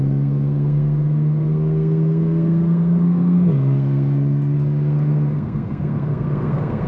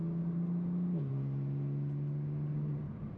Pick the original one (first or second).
second